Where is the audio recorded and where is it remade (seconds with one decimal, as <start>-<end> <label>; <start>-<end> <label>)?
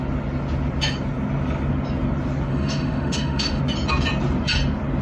0.0-2.5 recorded; 2.5-3.6 remade; 3.6-5.0 recorded